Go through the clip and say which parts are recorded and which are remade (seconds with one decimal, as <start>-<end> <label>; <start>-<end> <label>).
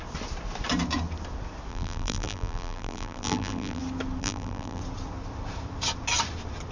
0.0-1.7 recorded; 1.7-3.8 remade; 3.8-4.2 recorded; 4.2-4.8 remade; 4.8-6.7 recorded